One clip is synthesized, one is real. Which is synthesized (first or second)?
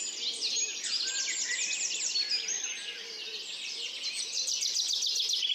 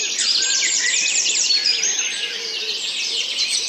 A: second